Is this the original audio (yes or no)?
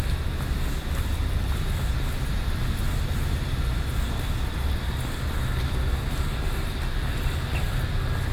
yes